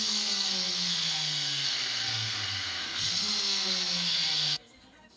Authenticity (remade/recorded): remade